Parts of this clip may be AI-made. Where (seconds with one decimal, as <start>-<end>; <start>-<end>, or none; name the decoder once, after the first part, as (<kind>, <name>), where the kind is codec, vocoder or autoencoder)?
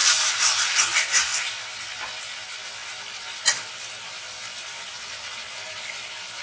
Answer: 0.0-0.8 (vocoder, BigVGAN v2)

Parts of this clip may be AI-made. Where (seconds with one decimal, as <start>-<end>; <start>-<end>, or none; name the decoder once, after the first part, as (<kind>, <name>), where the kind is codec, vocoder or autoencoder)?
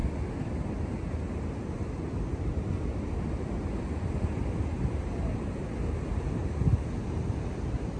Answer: none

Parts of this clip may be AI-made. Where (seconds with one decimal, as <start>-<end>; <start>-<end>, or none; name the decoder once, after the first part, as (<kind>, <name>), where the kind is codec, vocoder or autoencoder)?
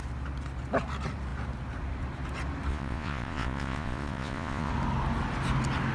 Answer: 2.7-4.7 (vocoder, Vocos)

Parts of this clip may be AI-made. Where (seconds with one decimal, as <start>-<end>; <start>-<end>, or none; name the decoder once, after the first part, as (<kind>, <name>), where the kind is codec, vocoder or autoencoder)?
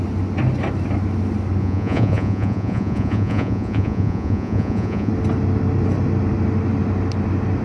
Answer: 1.6-5.1 (vocoder, Vocos)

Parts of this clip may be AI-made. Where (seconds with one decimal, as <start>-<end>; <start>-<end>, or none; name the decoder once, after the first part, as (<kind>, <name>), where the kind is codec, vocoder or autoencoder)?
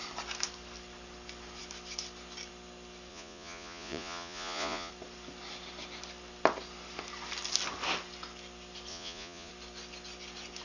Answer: 3.1-4.9 (vocoder, Vocos); 8.9-9.5